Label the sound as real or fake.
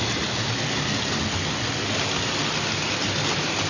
real